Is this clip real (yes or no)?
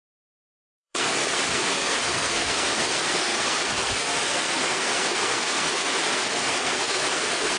no